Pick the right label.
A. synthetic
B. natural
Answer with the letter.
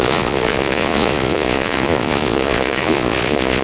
A